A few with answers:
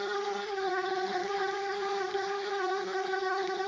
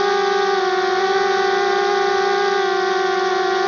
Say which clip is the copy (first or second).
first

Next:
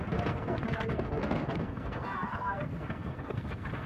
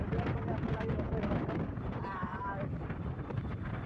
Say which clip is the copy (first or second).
first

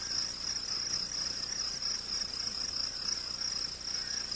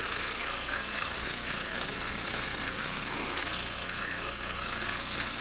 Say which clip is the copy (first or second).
second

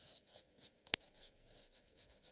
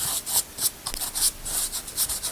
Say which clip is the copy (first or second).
first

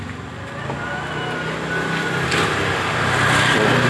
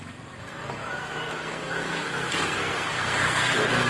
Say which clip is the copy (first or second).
second